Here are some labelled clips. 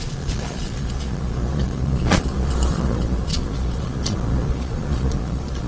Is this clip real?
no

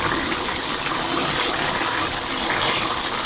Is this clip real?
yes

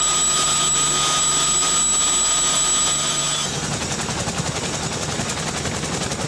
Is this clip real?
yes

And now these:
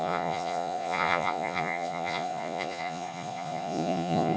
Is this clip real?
no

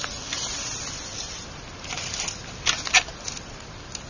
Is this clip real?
yes